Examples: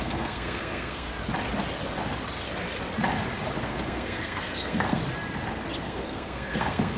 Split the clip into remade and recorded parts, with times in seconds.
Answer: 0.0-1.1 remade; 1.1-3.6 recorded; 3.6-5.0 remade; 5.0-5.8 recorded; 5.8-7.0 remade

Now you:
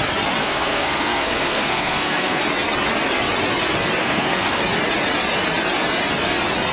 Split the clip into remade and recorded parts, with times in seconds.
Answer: 0.0-0.4 recorded; 0.4-2.4 remade; 2.4-4.0 recorded; 4.0-4.6 remade; 4.6-6.7 recorded

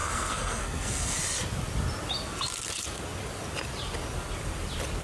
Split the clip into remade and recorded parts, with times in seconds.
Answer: 0.0-1.2 remade; 1.2-5.0 recorded

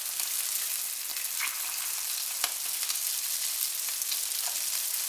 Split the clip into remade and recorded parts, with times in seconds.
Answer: 0.0-5.1 recorded

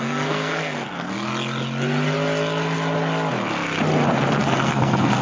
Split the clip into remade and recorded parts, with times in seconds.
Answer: 0.0-1.3 remade; 1.3-4.4 recorded; 4.4-5.2 remade